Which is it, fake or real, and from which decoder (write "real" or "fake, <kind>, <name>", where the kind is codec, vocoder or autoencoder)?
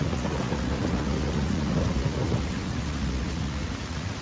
fake, vocoder, Vocos